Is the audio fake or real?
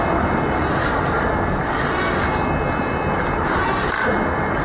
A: fake